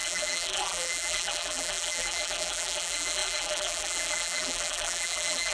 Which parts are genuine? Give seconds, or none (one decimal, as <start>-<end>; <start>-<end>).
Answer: none